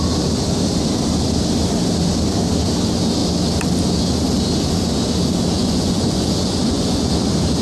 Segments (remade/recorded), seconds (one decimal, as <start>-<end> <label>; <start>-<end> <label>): 0.0-5.6 recorded; 5.6-7.1 remade; 7.1-7.6 recorded